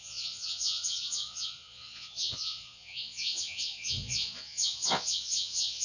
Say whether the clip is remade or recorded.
remade